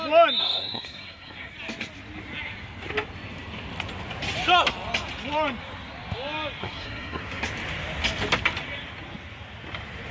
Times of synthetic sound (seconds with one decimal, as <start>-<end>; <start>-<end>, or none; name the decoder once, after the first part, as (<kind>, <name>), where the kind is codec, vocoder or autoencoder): 0.4-1.5 (codec, SNAC); 6.6-7.4